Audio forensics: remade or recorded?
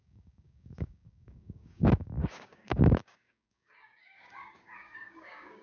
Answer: remade